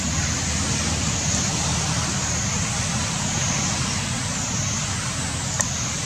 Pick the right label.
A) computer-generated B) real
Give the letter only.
B